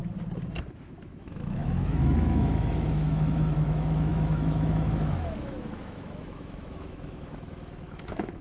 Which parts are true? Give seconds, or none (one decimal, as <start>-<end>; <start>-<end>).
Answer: 0.0-0.9